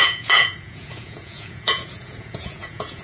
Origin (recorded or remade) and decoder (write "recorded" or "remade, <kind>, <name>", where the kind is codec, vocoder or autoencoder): remade, vocoder, Vocos